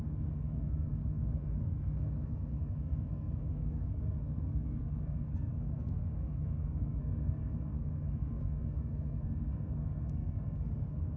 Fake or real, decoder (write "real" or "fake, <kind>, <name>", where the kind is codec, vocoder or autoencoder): fake, codec, SNAC